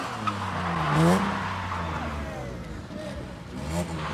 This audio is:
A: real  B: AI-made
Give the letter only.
A